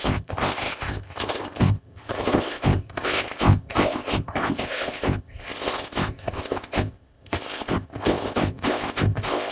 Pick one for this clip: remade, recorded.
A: remade